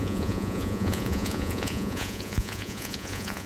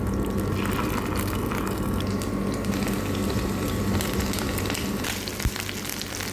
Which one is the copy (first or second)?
first